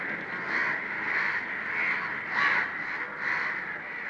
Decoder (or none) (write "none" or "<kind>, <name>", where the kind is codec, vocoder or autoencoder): none